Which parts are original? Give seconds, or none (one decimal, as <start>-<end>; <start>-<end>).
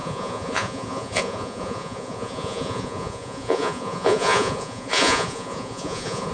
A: none